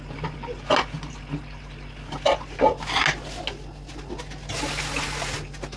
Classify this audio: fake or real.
real